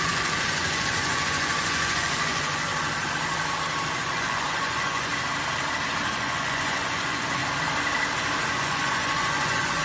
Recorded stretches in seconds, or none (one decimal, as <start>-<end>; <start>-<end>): 2.7-4.0; 5.1-6.1; 7.4-8.5